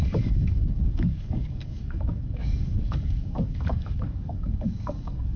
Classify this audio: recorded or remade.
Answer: remade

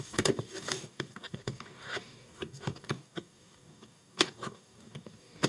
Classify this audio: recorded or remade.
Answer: remade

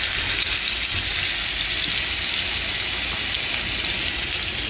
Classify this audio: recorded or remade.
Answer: recorded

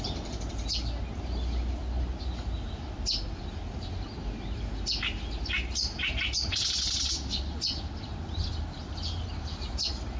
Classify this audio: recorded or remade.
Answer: recorded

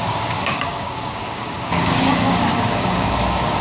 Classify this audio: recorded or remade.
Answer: remade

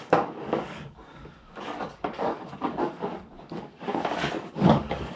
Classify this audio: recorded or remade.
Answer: remade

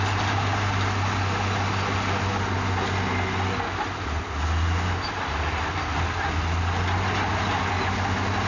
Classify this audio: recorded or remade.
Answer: recorded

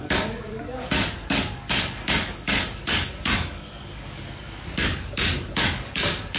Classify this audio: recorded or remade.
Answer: remade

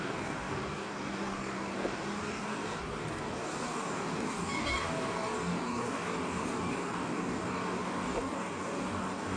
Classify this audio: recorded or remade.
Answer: remade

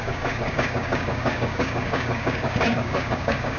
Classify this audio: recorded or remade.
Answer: remade